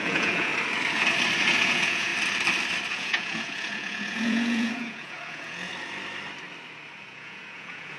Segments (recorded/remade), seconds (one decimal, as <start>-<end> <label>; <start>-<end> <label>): 0.0-0.5 remade; 0.5-1.6 recorded; 1.6-2.1 remade; 2.1-2.9 recorded; 2.9-5.7 remade; 5.7-7.0 recorded; 7.0-8.0 remade